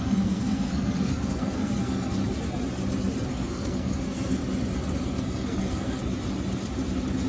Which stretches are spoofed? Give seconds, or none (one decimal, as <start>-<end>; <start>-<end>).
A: 0.0-2.2; 3.3-4.4; 5.0-6.0